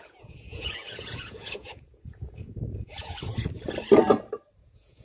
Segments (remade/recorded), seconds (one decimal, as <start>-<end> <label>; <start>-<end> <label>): 0.0-3.3 remade; 3.3-4.6 recorded; 4.6-5.0 remade